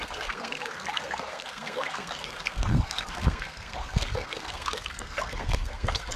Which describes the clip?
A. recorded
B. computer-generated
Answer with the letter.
B